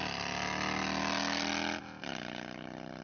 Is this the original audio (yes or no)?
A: yes